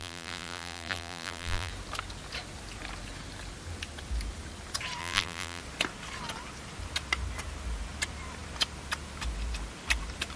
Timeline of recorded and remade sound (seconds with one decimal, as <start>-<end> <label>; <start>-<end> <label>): 0.0-1.7 remade; 1.7-5.0 recorded; 5.0-5.6 remade; 5.6-10.4 recorded